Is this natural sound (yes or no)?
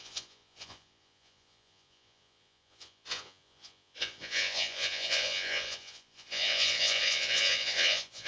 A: no